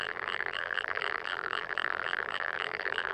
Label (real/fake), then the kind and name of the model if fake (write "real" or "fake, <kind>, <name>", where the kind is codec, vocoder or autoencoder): fake, vocoder, BigVGAN v2